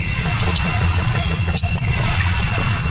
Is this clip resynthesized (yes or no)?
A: yes